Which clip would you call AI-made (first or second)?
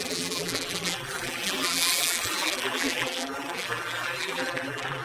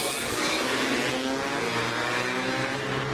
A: first